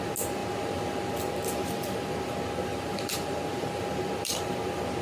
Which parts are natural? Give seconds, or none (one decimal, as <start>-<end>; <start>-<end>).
0.0-2.7; 3.8-5.0